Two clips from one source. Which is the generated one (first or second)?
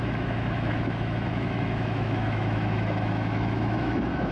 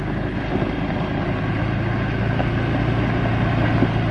first